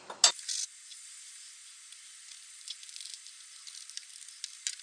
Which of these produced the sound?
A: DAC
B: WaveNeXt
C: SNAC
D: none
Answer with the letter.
D